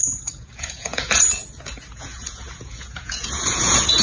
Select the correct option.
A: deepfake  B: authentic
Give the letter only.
A